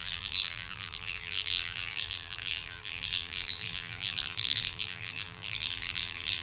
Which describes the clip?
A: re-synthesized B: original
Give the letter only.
A